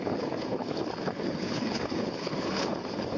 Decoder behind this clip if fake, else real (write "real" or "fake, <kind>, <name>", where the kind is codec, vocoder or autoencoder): fake, codec, HILCodec